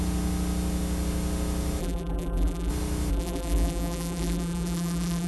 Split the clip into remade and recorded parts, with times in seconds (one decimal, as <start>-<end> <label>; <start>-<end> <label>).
0.0-1.8 recorded; 1.8-2.7 remade; 2.7-3.1 recorded; 3.1-5.3 remade